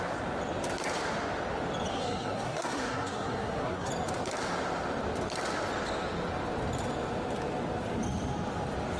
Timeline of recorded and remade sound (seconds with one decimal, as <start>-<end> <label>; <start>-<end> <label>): 0.0-1.9 recorded; 1.9-3.9 remade; 3.9-9.0 recorded